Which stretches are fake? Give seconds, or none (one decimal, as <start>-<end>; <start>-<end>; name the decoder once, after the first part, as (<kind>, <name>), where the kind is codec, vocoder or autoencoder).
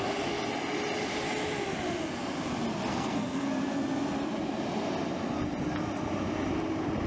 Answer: 2.9-3.5 (codec, SNAC)